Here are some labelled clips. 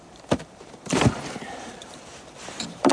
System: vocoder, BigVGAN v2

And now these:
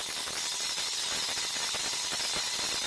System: none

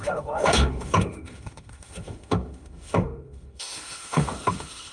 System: autoencoder, DAC-VAE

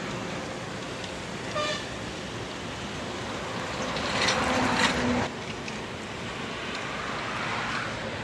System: none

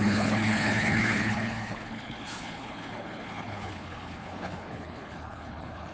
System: codec, HILCodec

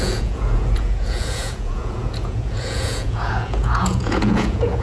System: vocoder, Vocos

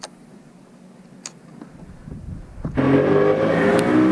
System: none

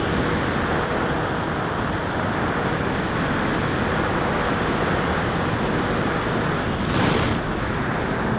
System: none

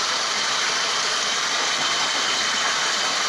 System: vocoder, BigVGAN v2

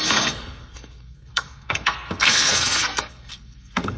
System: codec, SNAC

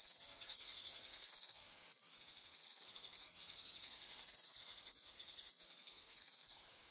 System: codec, SNAC